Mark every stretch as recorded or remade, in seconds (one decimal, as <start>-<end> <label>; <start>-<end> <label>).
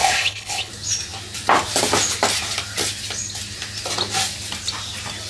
0.0-0.7 remade; 0.7-5.3 recorded